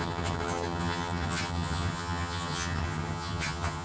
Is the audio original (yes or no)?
no